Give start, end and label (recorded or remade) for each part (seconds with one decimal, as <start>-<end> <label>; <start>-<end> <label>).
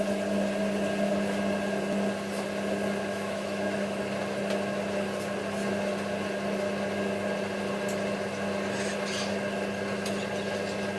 0.0-3.1 recorded; 3.1-4.0 remade; 4.0-11.0 recorded